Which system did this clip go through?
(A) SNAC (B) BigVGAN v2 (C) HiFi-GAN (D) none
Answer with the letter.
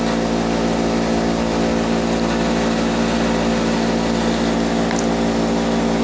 D